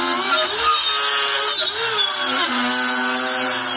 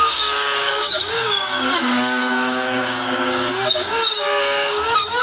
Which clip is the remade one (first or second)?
second